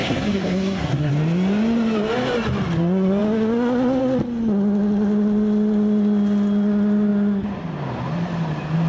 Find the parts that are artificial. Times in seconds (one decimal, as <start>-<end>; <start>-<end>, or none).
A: 0.0-1.1